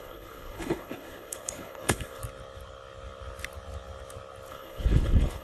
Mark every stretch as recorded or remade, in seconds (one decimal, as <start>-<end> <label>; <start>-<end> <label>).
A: 0.0-2.2 remade; 2.2-4.5 recorded; 4.5-5.4 remade

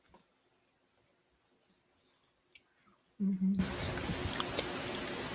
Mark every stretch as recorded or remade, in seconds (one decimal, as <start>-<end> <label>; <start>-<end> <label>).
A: 0.0-5.3 recorded

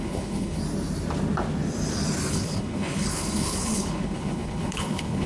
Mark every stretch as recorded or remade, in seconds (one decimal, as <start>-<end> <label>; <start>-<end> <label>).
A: 0.0-0.6 remade; 0.6-2.3 recorded; 2.3-5.3 remade

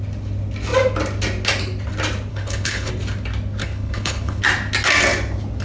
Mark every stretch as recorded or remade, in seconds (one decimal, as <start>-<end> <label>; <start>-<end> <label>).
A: 0.0-2.3 recorded; 2.3-2.9 remade; 2.9-3.6 recorded; 3.6-4.4 remade; 4.4-5.6 recorded

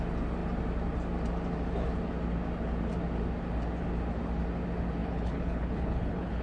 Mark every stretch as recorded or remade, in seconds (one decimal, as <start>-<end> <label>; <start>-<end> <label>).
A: 0.0-5.0 recorded; 5.0-6.4 remade